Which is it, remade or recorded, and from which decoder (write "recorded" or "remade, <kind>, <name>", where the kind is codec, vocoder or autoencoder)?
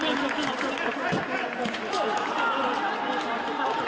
recorded